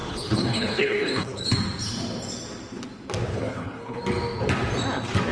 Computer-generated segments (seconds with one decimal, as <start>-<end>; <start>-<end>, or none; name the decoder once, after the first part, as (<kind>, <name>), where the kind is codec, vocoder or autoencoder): 0.0-1.4 (codec, HILCodec); 3.3-4.0